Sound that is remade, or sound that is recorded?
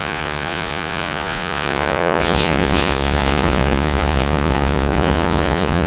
remade